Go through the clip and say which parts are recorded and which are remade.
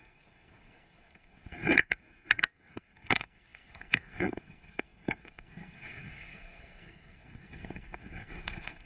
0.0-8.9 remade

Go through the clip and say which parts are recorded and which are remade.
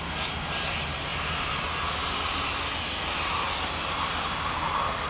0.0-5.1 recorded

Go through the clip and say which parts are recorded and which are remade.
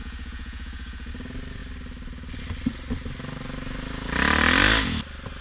0.0-1.1 remade; 1.1-5.4 recorded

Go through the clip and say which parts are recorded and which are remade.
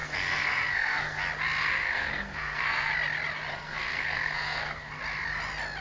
0.0-1.2 remade; 1.2-1.6 recorded; 1.6-2.9 remade; 2.9-3.5 recorded; 3.5-5.0 remade; 5.0-5.8 recorded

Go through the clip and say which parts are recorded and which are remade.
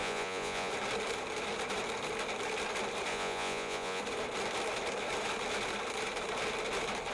0.0-0.7 remade; 0.7-3.1 recorded; 3.1-4.0 remade; 4.0-7.1 recorded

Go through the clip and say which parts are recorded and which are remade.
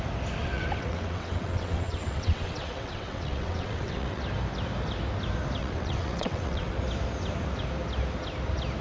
0.0-0.4 recorded; 0.4-4.2 remade; 4.2-5.6 recorded; 5.6-6.7 remade; 6.7-8.8 recorded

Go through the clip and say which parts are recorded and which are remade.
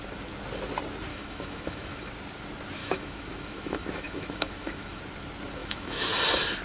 0.0-1.1 recorded; 1.1-2.1 remade; 2.1-2.8 recorded; 2.8-5.0 remade; 5.0-5.6 recorded; 5.6-6.1 remade; 6.1-6.6 recorded